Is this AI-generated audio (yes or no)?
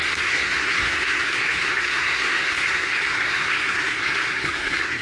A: yes